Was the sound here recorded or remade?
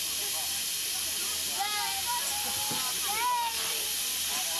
recorded